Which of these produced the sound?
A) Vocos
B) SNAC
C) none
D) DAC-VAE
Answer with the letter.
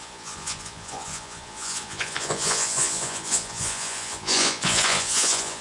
A